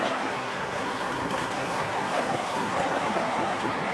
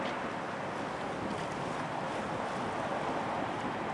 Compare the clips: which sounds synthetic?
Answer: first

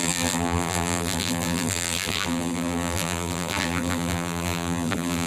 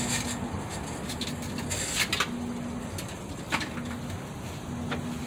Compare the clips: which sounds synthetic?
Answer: first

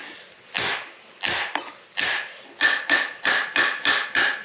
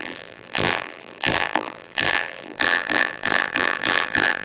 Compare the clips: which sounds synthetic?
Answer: second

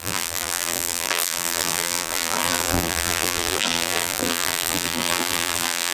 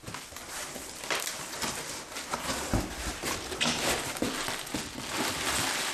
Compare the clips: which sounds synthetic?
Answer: first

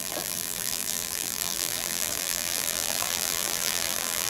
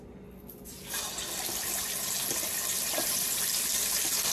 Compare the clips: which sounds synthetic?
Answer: first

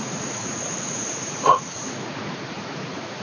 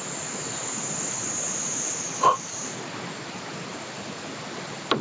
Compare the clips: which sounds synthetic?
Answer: first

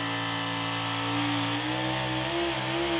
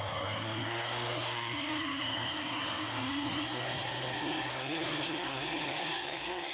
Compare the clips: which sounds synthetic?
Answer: second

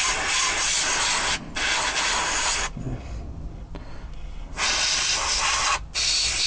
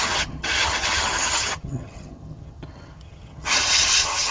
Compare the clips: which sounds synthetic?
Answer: second